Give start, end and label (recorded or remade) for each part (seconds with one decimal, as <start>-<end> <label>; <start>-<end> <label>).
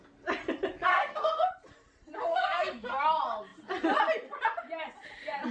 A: 0.0-0.9 recorded; 0.9-1.5 remade; 1.5-2.3 recorded; 2.3-3.0 remade; 3.0-5.5 recorded